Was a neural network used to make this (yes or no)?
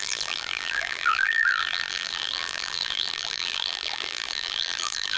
yes